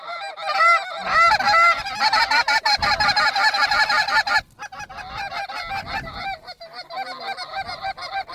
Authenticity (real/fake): real